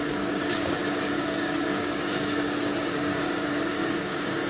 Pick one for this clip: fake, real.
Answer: fake